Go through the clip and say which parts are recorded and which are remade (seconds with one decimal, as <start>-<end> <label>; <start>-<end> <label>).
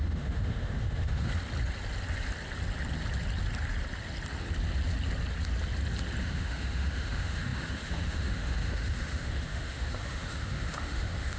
0.0-1.3 remade; 1.3-6.2 recorded; 6.2-11.4 remade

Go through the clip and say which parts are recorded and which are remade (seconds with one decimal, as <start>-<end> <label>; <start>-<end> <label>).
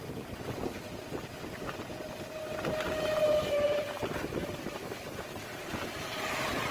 0.0-3.2 recorded; 3.2-3.9 remade; 3.9-6.7 recorded